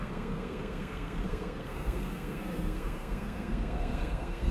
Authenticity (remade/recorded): remade